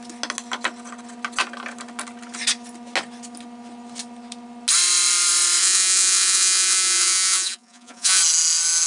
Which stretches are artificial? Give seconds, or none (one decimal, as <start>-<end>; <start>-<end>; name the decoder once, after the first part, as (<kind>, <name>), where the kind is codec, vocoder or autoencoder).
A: 5.6-8.2 (vocoder, Vocos)